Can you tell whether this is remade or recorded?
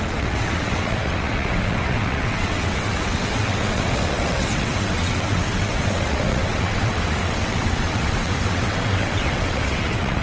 remade